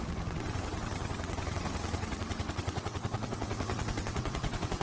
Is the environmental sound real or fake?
fake